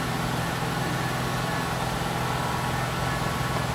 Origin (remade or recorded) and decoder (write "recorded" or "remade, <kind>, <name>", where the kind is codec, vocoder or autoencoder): recorded